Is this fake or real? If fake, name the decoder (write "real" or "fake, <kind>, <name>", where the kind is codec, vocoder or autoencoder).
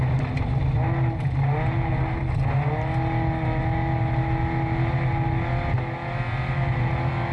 real